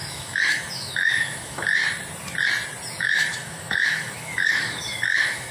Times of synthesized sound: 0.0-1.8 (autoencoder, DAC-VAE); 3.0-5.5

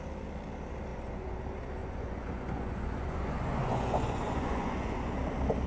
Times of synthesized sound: 0.9-1.4 (vocoder, Vocos); 1.8-5.1